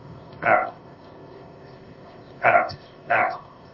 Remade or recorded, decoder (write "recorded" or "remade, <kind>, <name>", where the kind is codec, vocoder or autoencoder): remade, codec, ZipCodec